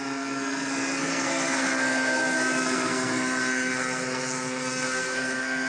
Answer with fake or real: fake